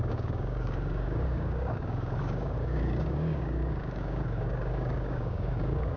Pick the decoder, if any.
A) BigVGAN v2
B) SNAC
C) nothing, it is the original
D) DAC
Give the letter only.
D